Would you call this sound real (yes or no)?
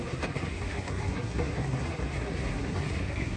no